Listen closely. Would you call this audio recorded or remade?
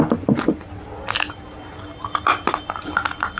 recorded